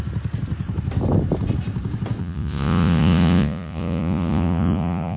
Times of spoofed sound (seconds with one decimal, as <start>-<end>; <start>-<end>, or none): 2.2-5.2